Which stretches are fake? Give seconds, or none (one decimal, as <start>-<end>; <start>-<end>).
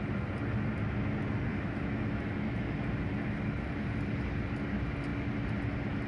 1.5-2.6